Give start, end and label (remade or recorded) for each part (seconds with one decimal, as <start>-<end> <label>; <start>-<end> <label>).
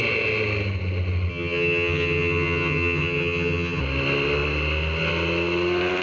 0.0-1.3 recorded; 1.3-3.8 remade; 3.8-6.0 recorded